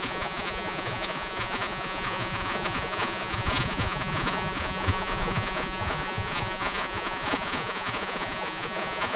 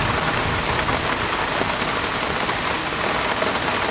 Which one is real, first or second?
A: second